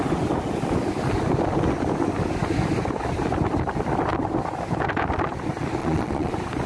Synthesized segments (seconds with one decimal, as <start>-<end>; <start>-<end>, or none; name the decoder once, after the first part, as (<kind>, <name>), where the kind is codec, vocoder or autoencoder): 5.8-6.3 (vocoder, Vocos)